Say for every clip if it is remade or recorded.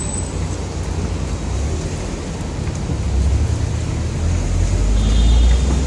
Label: recorded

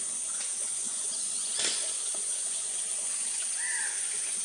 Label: remade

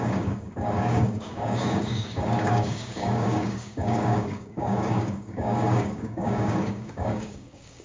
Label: remade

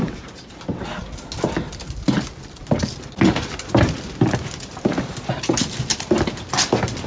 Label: recorded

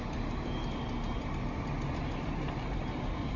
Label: recorded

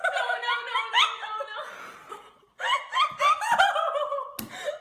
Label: recorded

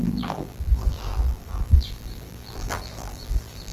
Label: remade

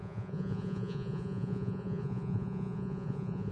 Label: remade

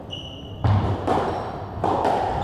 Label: recorded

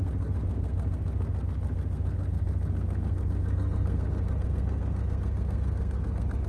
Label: remade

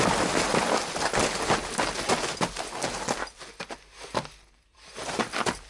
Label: recorded